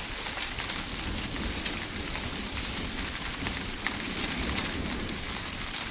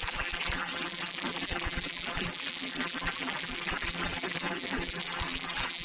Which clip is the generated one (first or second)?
second